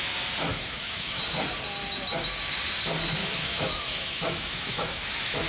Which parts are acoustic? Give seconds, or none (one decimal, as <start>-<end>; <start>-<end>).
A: 0.0-0.5; 1.2-3.2